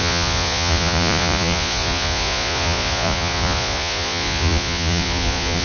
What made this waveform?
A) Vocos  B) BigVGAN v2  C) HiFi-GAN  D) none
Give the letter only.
A